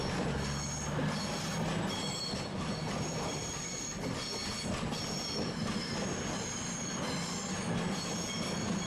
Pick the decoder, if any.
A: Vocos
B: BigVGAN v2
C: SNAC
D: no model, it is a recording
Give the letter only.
D